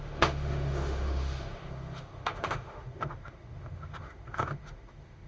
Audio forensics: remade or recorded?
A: remade